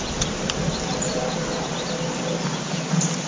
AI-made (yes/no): no